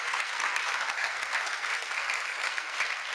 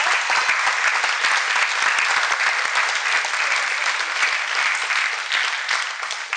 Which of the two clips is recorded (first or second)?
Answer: second